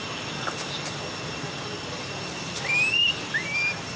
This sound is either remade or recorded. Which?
recorded